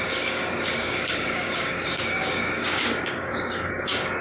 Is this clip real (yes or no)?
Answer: no